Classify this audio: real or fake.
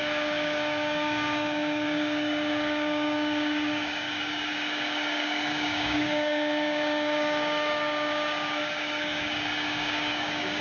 fake